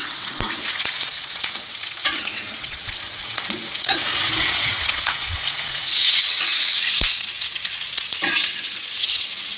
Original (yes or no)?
no